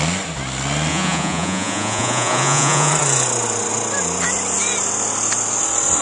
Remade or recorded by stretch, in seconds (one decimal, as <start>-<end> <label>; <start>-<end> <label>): 0.0-0.9 recorded; 0.9-2.9 remade; 2.9-6.0 recorded